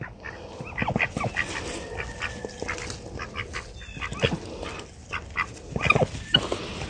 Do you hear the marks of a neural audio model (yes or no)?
no